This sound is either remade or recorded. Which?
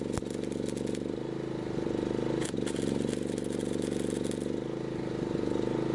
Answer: recorded